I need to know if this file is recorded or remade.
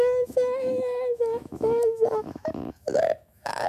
remade